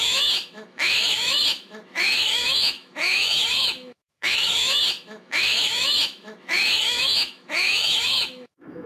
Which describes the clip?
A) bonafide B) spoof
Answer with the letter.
B